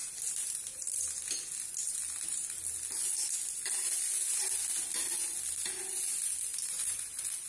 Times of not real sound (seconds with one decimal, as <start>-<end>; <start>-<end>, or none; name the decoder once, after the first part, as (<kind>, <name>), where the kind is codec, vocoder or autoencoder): 0.0-1.1 (vocoder, BigVGAN v2); 6.5-7.5